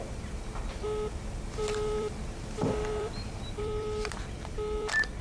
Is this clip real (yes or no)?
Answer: no